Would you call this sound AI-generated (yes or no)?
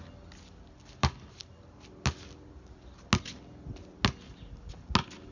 no